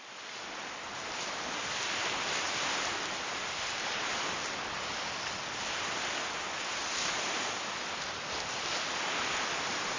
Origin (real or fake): real